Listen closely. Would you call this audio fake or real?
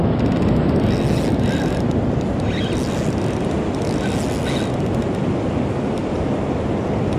real